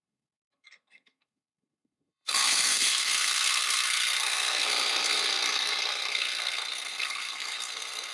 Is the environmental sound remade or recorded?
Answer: remade